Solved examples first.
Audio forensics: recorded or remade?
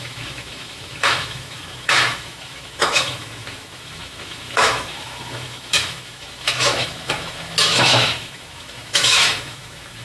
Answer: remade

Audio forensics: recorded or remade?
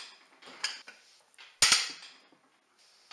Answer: recorded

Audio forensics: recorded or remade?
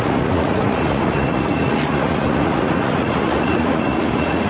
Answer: remade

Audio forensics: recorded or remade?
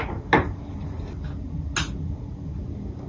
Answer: recorded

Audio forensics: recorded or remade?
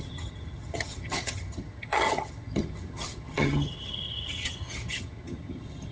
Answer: remade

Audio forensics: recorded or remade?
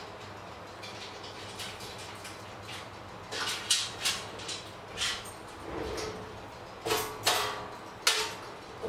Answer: recorded